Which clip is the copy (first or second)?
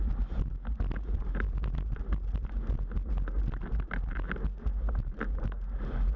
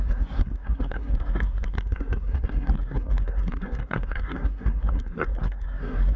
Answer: second